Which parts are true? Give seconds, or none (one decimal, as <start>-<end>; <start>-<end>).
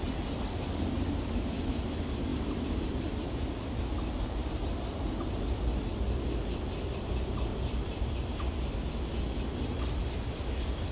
0.0-10.9